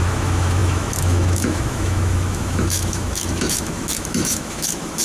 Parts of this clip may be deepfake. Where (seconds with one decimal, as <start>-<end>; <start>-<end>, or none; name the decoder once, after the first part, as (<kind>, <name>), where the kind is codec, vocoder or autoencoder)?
0.0-5.0 (autoencoder, DAC-VAE)